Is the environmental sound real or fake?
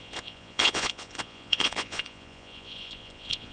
fake